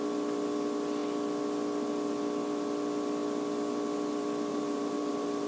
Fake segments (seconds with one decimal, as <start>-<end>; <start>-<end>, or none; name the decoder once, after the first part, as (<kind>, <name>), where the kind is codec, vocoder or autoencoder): 4.5-5.5 (vocoder, BigVGAN v2)